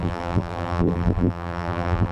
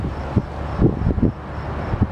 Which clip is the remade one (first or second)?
first